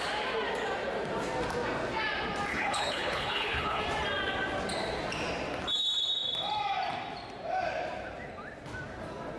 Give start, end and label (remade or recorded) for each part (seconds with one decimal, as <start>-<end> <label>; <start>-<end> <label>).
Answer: 0.0-2.5 recorded; 2.5-3.8 remade; 3.8-9.4 recorded